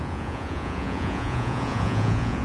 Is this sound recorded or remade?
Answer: remade